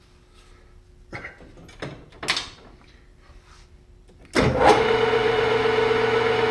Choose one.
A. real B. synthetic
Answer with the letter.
A